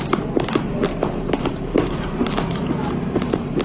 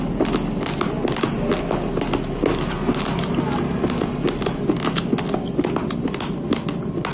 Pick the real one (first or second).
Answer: second